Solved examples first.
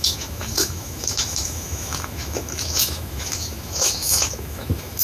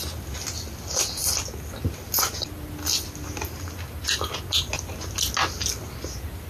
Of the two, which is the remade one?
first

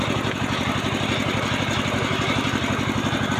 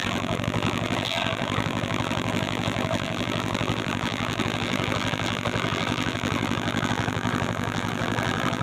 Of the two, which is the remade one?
second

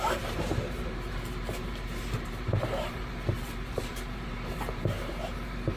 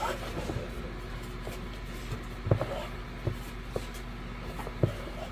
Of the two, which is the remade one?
first